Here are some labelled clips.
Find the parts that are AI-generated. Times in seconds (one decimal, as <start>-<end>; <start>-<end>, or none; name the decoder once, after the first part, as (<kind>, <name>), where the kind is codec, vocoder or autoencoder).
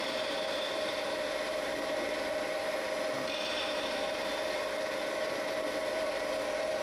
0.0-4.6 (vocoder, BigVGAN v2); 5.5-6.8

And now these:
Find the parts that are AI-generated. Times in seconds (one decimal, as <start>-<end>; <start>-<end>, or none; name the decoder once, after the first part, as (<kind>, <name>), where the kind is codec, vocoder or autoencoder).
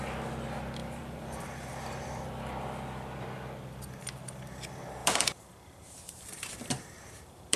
0.8-2.4 (vocoder, BigVGAN v2); 5.0-7.6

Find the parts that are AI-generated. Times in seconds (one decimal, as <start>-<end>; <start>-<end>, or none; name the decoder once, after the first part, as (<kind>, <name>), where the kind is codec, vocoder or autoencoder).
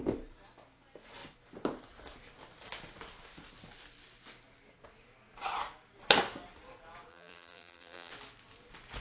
7.1-8.1 (vocoder, BigVGAN v2)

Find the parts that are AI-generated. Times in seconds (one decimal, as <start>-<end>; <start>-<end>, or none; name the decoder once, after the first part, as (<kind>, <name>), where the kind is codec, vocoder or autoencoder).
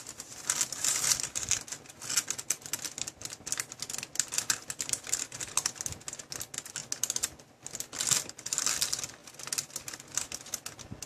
none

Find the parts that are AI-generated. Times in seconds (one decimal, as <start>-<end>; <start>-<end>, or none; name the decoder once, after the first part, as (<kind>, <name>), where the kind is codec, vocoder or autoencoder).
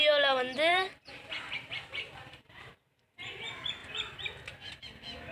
0.7-3.4 (vocoder, BigVGAN v2)